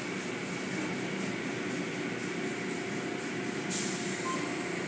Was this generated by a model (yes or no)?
no